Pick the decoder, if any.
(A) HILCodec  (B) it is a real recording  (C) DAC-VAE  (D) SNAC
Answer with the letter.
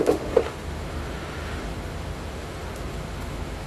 C